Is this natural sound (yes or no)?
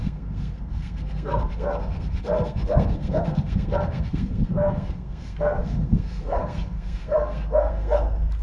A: no